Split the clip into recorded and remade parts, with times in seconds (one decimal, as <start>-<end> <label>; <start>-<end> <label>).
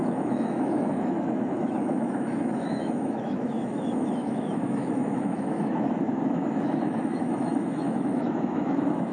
0.0-9.1 remade